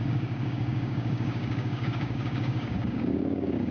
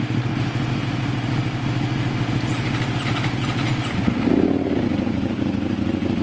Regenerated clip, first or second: first